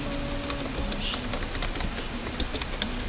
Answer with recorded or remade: recorded